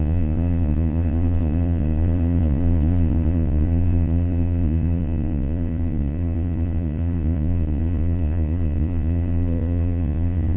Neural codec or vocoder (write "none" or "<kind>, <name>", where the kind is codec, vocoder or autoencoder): vocoder, Vocos